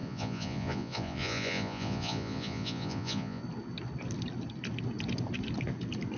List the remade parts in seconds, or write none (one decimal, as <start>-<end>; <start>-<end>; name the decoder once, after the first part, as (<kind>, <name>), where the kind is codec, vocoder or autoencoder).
0.0-3.4 (vocoder, Vocos)